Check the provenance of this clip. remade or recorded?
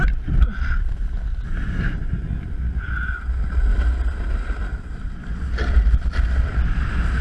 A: recorded